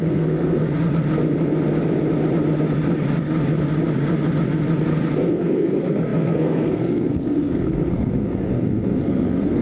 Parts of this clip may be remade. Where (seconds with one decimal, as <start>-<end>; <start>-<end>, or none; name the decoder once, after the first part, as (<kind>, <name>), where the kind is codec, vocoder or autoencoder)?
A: 0.0-0.6 (codec, SNAC); 5.3-9.6